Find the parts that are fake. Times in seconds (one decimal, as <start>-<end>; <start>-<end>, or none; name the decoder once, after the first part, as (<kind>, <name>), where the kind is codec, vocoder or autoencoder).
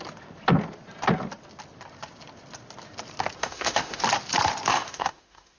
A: 3.4-4.0 (autoencoder, DAC-VAE); 4.7-5.6